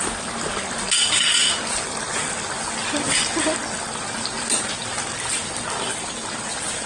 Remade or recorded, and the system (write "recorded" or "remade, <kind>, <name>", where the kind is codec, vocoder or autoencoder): recorded